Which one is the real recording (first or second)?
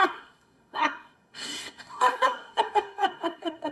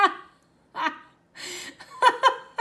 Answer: second